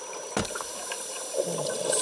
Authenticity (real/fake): real